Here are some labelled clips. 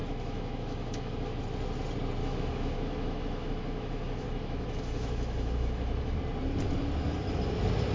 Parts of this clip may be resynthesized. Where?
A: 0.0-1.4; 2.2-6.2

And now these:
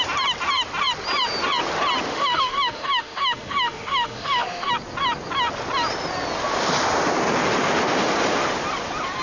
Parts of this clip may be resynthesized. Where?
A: 2.1-4.7

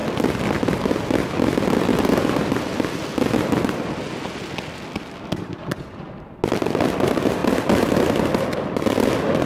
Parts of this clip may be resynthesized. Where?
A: none

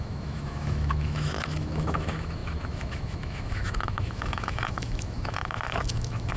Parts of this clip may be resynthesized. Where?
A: 0.0-6.4

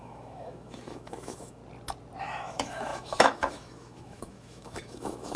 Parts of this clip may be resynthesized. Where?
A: 0.0-1.6; 2.2-5.4